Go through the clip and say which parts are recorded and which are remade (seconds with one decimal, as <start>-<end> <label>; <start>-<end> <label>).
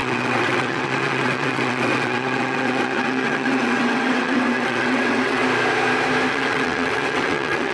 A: 0.0-5.4 remade; 5.4-6.3 recorded; 6.3-7.7 remade